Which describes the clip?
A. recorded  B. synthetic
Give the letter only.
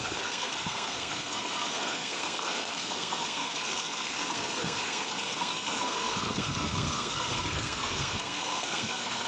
B